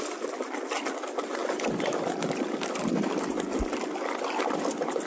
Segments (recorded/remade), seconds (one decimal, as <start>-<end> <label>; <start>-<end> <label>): 0.0-5.1 recorded